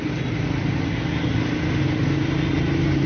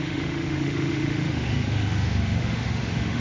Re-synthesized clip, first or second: second